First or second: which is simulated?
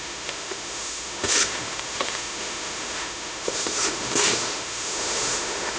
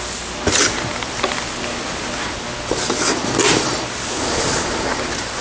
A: first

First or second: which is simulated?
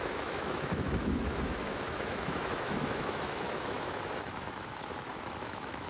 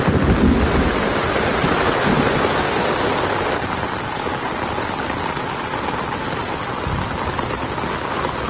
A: first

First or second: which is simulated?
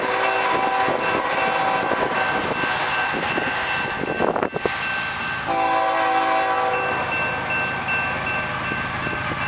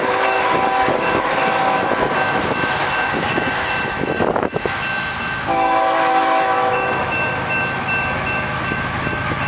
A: second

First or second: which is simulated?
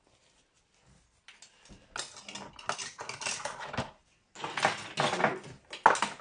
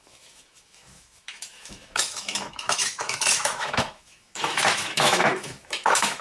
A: second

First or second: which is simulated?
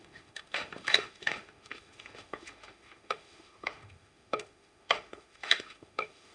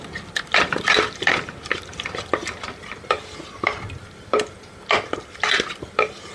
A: first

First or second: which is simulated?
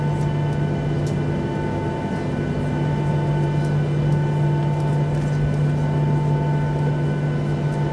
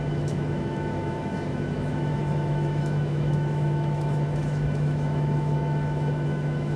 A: second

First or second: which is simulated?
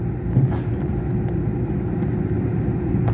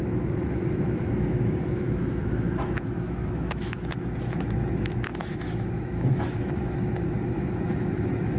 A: second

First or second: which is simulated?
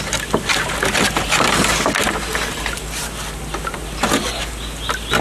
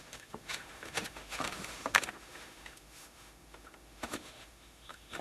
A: second